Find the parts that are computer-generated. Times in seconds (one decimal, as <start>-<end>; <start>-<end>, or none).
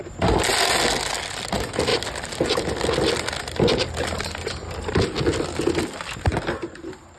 none